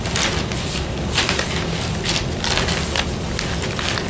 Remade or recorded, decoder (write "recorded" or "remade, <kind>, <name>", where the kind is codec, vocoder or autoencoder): recorded